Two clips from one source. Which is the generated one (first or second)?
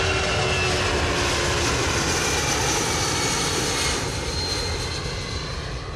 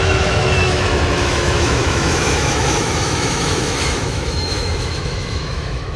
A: second